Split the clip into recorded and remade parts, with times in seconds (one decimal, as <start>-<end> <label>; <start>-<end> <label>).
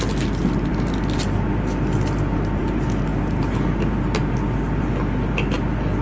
0.0-6.0 recorded